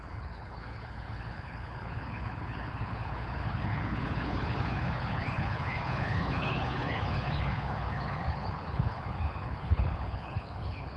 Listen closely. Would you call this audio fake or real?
fake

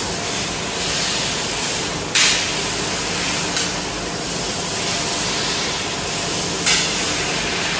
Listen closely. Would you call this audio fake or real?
real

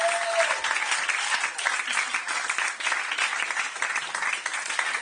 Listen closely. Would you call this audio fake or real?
real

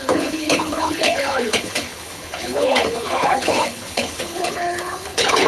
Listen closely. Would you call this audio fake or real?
fake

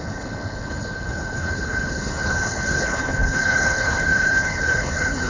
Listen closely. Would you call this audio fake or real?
fake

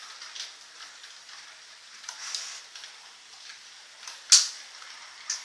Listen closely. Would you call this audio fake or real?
real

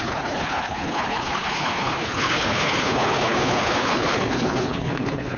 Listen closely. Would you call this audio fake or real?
fake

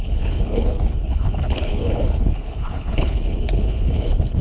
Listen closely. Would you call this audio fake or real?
fake